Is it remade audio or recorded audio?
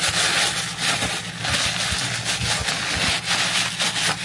recorded